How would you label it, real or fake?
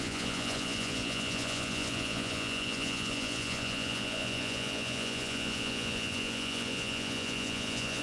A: fake